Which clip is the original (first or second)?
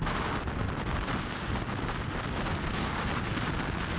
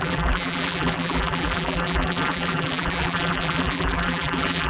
first